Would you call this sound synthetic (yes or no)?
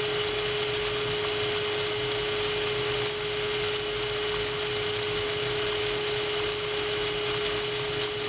no